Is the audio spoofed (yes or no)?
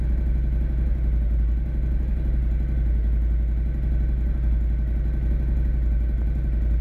no